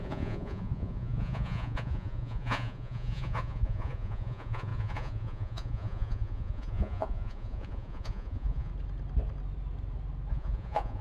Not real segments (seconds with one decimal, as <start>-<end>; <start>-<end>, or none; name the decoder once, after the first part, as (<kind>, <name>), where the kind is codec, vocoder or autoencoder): 0.0-8.7 (vocoder, Vocos); 10.3-11.0